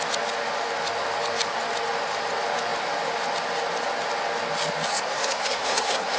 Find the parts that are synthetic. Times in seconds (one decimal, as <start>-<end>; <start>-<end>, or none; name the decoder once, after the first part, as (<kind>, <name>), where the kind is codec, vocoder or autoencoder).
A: 4.9-6.2 (codec, SNAC)